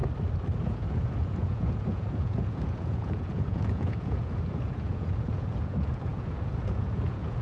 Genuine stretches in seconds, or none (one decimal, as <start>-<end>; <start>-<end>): 0.0-0.6